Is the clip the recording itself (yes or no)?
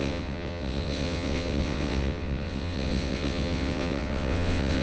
no